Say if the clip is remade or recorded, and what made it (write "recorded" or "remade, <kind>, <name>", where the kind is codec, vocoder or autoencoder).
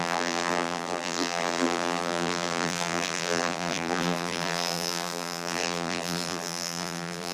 remade, vocoder, BigVGAN v2